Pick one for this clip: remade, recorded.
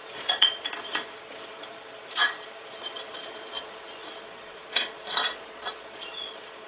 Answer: remade